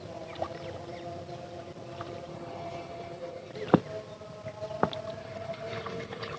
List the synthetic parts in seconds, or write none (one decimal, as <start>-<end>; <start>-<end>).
2.3-3.5; 5.2-6.4